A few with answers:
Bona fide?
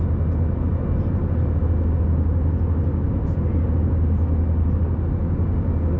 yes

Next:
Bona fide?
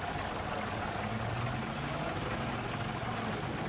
yes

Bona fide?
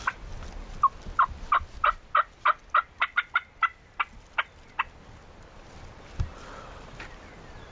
yes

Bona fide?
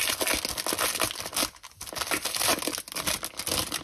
yes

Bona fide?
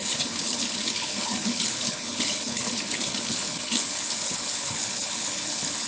no